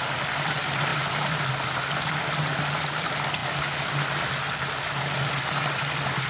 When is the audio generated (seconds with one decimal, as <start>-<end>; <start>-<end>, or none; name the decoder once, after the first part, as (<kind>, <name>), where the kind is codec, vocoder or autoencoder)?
none